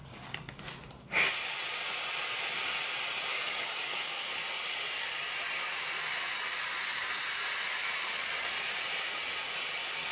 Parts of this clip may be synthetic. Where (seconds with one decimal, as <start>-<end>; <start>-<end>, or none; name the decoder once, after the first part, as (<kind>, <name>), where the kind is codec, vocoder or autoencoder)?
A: 0.0-0.6 (codec, DAC); 3.3-4.3